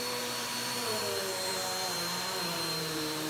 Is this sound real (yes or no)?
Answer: no